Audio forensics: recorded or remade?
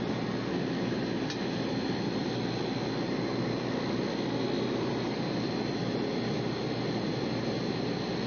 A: recorded